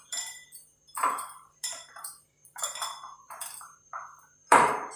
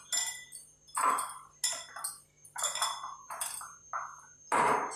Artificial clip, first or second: first